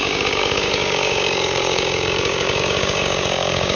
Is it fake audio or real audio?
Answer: fake